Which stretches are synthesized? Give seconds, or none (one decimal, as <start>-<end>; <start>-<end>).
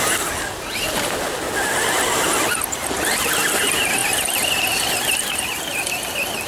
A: none